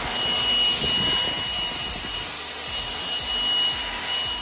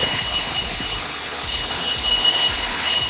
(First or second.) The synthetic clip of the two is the second